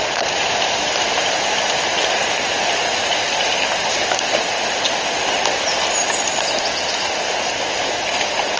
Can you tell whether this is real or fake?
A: real